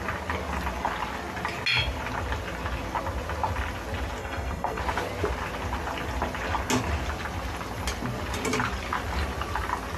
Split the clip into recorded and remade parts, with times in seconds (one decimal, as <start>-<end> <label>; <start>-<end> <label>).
0.0-4.2 recorded; 4.2-4.8 remade; 4.8-10.0 recorded

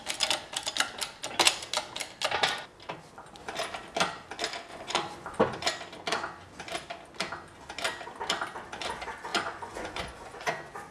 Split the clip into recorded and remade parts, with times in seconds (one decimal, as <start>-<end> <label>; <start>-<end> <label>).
0.0-4.7 recorded; 4.7-5.4 remade; 5.4-9.3 recorded; 9.3-10.9 remade

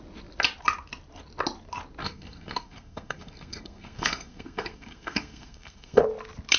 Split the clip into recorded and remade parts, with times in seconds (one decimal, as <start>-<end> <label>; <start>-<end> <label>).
0.0-2.0 recorded; 2.0-6.0 remade; 6.0-6.6 recorded

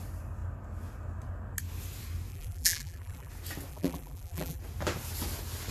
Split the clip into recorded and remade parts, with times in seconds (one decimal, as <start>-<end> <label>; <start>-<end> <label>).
0.0-2.3 recorded; 2.3-3.3 remade; 3.3-3.7 recorded; 3.7-4.6 remade; 4.6-5.7 recorded

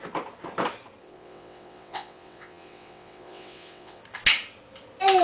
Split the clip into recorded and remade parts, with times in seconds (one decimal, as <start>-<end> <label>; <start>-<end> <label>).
0.0-1.0 recorded; 1.0-4.0 remade; 4.0-5.2 recorded

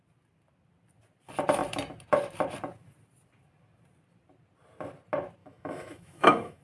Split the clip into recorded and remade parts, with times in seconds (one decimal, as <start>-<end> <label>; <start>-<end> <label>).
0.0-5.4 recorded; 5.4-6.6 remade

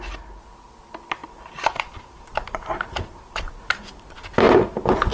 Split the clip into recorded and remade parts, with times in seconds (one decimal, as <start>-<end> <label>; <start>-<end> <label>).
0.0-1.2 recorded; 1.2-3.5 remade; 3.5-5.1 recorded